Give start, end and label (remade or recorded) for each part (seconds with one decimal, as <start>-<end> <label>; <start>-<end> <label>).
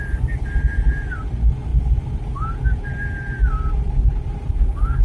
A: 0.0-5.0 recorded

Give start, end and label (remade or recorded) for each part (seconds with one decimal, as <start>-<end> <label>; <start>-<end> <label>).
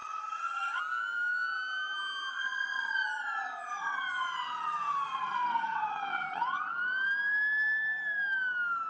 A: 0.0-0.8 remade; 0.8-2.3 recorded; 2.3-6.7 remade; 6.7-8.9 recorded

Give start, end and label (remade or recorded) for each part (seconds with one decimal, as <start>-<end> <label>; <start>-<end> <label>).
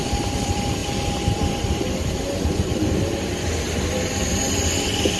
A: 0.0-5.2 remade